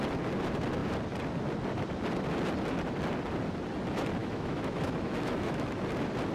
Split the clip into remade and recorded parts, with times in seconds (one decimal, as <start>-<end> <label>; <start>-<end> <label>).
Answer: 0.0-4.2 recorded; 4.2-5.8 remade; 5.8-6.3 recorded